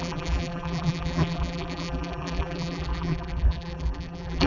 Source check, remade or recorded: remade